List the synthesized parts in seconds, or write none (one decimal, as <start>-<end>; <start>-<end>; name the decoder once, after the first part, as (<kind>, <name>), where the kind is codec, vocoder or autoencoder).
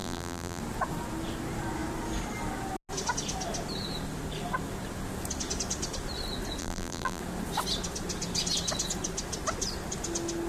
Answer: 0.0-0.6 (vocoder, BigVGAN v2); 6.6-7.2